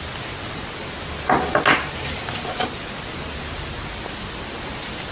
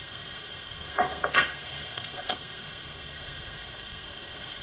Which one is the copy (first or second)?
second